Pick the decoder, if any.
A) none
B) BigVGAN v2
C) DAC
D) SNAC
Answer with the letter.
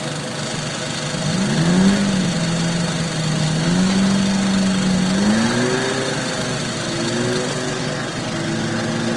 A